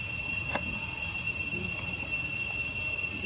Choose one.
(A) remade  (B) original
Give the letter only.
B